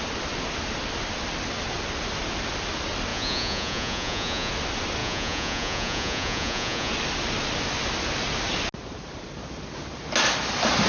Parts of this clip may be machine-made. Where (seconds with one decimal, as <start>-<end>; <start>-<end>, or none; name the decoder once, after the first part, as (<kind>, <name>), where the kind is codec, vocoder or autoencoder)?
3.1-4.5 (vocoder, Vocos); 5.0-6.9